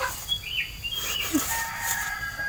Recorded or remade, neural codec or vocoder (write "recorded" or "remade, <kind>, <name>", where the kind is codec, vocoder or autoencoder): recorded